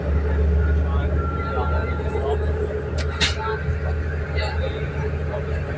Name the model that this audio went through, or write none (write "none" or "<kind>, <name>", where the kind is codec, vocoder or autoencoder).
none